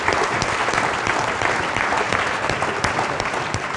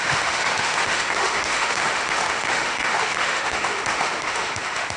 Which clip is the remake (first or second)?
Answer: second